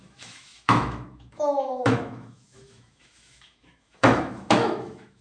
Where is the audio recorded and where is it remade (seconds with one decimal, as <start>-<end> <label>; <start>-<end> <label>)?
0.0-5.2 remade

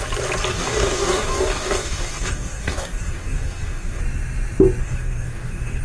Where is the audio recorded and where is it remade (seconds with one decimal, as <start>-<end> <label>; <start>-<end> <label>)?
0.0-0.5 recorded; 0.5-4.0 remade; 4.0-4.8 recorded; 4.8-5.8 remade

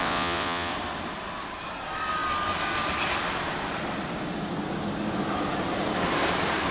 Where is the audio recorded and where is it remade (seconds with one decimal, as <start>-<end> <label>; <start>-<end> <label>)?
0.0-0.7 remade; 0.7-6.7 recorded

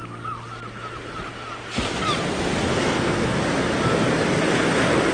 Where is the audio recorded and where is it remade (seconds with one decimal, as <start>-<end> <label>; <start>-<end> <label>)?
0.0-2.8 recorded; 2.8-3.4 remade; 3.4-5.1 recorded